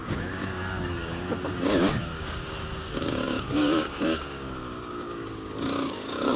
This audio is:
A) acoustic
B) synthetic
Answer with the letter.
B